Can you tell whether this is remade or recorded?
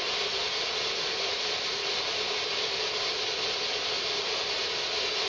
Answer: recorded